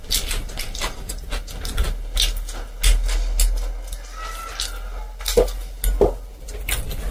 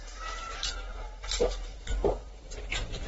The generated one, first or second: second